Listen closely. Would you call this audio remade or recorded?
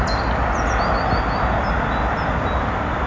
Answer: recorded